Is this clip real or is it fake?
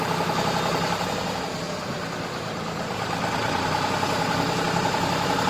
real